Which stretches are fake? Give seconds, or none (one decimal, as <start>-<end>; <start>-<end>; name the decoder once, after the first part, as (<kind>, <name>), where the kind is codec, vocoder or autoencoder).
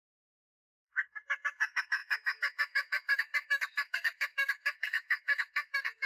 0.0-6.1 (codec, SNAC)